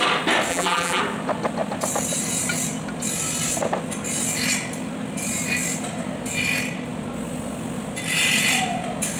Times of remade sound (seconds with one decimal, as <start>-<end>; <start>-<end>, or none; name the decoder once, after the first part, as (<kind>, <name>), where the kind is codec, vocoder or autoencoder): 0.5-1.0 (vocoder, BigVGAN v2)